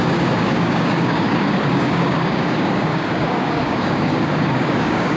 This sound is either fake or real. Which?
fake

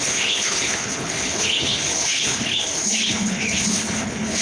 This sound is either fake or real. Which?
fake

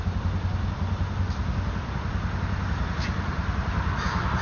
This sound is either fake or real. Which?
real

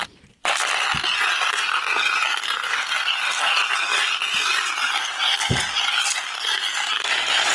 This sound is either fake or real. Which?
real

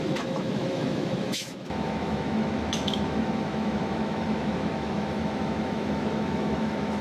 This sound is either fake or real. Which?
fake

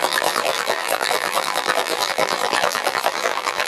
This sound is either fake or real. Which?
fake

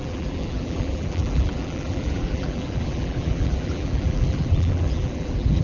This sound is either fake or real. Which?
fake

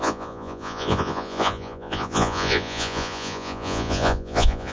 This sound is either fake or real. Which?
fake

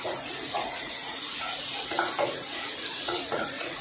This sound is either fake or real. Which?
fake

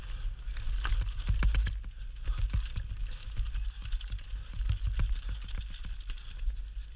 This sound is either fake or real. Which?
real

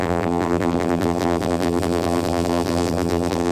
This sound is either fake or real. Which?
fake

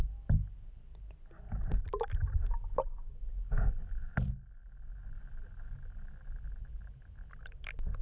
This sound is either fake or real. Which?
real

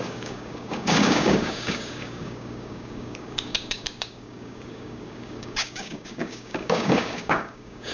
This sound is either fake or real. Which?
fake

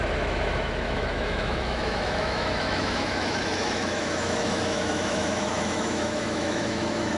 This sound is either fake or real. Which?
fake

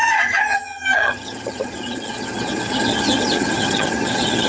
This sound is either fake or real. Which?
fake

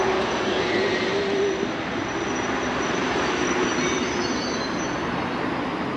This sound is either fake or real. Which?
real